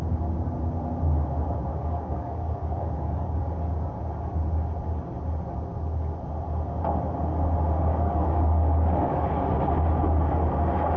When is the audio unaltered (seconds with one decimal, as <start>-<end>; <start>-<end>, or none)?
0.0-1.7; 3.4-7.9; 9.4-11.0